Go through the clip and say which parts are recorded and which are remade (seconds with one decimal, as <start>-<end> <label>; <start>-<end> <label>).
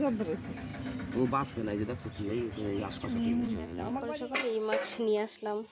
0.0-3.4 recorded; 3.4-4.0 remade; 4.0-5.7 recorded